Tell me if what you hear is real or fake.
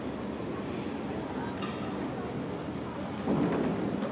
real